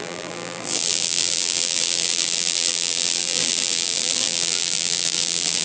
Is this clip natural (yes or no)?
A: no